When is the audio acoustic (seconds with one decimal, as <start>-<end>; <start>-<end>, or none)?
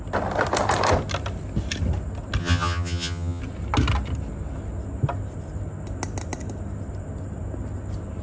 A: 0.0-2.4; 3.4-8.2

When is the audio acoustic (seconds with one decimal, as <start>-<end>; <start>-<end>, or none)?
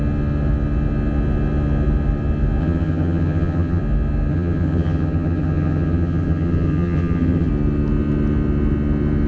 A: 0.0-2.6; 3.8-4.3; 7.5-9.3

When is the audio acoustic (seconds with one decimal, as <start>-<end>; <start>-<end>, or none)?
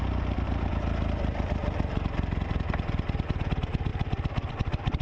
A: 0.0-5.0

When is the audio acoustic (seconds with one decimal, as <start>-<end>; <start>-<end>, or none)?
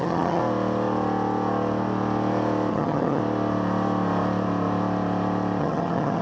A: 0.4-2.7; 3.2-5.6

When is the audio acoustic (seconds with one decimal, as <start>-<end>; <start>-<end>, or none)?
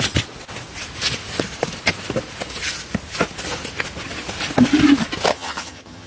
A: 0.0-5.3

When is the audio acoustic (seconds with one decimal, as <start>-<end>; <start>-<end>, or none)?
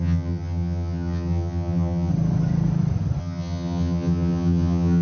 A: 2.1-3.2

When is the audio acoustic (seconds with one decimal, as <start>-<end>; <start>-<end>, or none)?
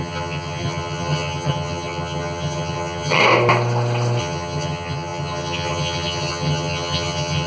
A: 3.2-4.2